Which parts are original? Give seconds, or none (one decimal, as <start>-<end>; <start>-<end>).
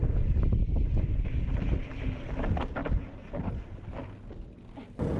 0.0-2.8; 3.5-5.2